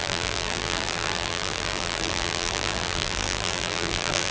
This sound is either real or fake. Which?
fake